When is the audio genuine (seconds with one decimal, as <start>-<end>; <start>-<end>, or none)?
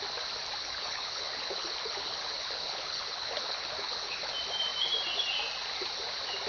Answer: 0.0-0.6; 4.3-6.5